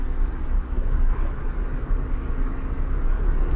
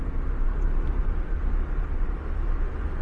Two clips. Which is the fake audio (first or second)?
first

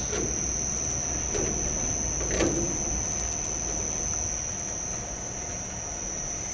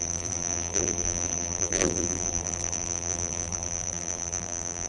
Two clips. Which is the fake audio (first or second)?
second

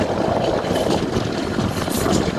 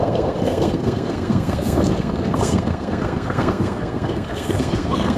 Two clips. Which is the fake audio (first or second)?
second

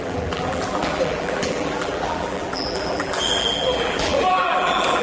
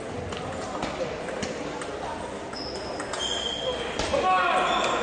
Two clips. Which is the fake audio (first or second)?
first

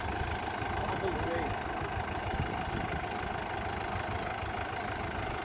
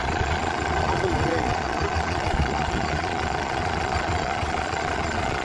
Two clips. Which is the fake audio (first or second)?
second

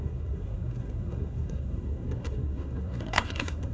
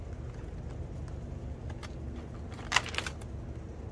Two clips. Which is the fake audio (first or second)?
first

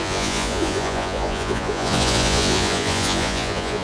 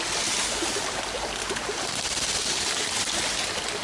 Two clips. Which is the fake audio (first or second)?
first